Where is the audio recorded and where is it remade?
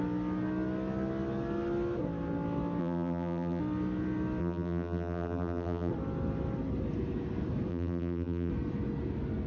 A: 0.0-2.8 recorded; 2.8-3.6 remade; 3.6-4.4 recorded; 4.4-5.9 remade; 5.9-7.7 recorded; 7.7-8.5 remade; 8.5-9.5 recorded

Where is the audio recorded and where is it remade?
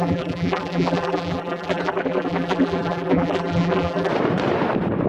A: 0.0-4.1 remade; 4.1-5.1 recorded